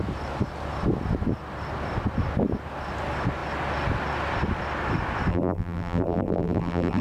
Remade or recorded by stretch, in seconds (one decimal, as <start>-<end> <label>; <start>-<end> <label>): 0.0-5.3 recorded; 5.3-7.0 remade